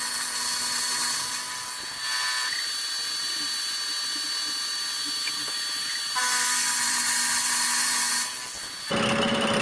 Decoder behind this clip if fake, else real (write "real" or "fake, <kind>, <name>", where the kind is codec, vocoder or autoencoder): real